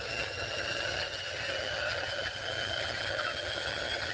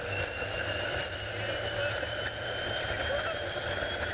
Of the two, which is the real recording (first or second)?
second